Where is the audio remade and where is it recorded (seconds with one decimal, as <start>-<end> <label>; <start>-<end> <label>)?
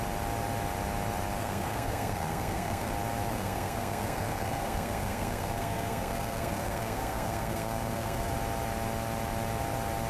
0.0-1.4 recorded; 1.4-2.9 remade; 2.9-3.3 recorded; 3.3-8.3 remade; 8.3-10.1 recorded